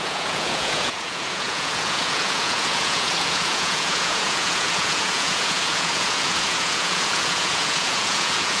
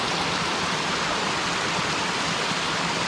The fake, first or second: first